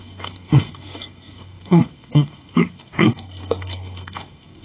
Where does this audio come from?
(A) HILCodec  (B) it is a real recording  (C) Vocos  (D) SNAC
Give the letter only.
D